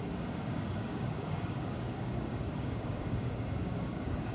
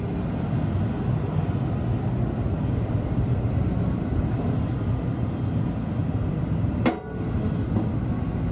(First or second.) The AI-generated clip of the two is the first